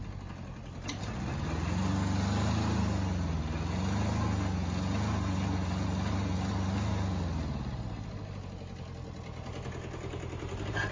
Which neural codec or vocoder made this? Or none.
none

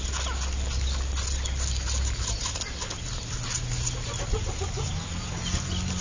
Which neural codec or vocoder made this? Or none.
none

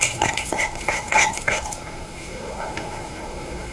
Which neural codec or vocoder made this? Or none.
codec, SNAC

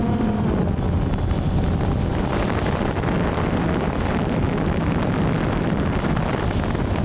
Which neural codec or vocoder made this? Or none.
none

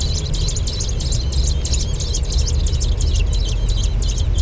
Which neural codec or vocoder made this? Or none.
none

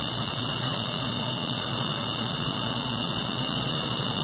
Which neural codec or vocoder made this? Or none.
vocoder, Vocos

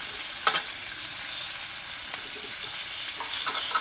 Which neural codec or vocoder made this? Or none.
none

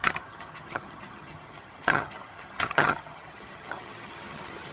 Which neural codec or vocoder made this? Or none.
vocoder, HiFi-GAN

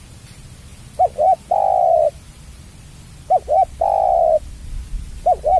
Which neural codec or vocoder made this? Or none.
none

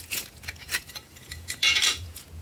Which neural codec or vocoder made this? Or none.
vocoder, Vocos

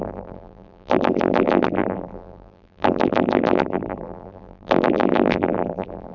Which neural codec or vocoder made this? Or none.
vocoder, BigVGAN v2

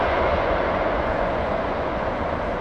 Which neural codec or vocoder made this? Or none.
vocoder, Vocos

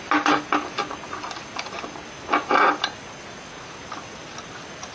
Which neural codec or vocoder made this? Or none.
none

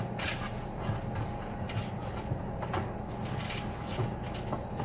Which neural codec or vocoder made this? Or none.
none